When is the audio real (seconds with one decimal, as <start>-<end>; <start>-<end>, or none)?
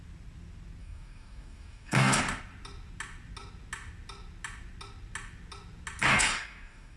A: 0.0-0.8; 2.2-6.1